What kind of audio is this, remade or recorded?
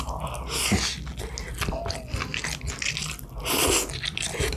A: recorded